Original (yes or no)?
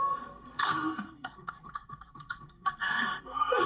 no